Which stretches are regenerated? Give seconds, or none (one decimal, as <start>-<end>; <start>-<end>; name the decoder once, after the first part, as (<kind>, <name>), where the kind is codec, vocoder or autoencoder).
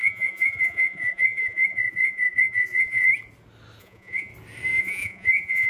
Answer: 0.0-3.1 (vocoder, Vocos); 3.8-4.3; 4.8-5.7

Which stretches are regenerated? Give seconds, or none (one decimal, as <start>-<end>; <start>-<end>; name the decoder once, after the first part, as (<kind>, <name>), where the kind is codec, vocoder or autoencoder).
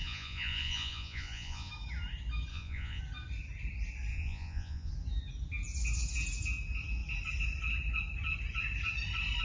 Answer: 0.0-1.7 (vocoder, Vocos); 2.5-3.0; 4.1-4.9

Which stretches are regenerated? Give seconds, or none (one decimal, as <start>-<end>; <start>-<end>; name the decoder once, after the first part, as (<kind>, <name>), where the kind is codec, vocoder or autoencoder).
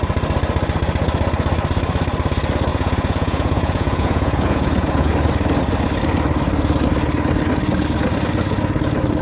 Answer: 2.7-5.1 (vocoder, Vocos)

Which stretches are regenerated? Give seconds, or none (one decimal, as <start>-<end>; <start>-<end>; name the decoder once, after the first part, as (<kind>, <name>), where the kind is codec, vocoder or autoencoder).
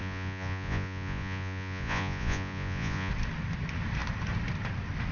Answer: 0.0-3.1 (vocoder, Vocos)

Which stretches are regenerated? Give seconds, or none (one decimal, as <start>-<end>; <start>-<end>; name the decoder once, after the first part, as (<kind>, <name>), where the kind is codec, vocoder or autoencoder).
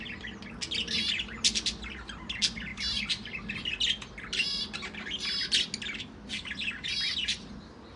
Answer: none